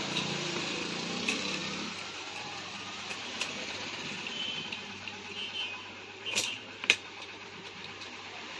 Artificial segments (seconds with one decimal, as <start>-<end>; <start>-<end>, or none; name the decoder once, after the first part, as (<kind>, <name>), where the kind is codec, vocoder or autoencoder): 0.0-8.6 (vocoder, BigVGAN v2)